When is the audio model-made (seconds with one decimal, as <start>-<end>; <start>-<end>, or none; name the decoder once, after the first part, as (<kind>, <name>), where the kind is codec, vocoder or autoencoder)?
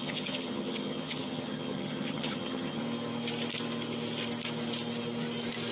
0.0-2.8 (vocoder, HiFi-GAN)